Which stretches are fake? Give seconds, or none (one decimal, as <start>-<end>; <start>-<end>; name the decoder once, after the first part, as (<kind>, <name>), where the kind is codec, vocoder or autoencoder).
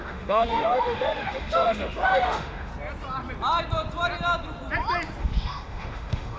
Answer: 0.0-2.7 (autoencoder, DAC-VAE); 5.2-6.4